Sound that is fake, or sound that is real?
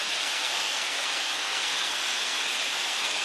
fake